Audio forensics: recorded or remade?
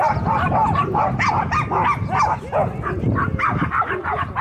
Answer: recorded